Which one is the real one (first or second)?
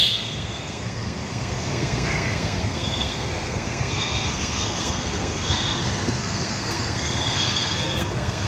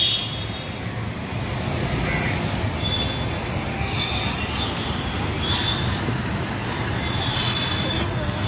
second